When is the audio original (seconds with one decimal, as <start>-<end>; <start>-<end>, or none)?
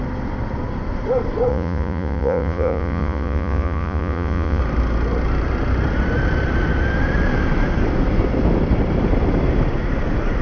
0.0-1.5; 4.6-10.4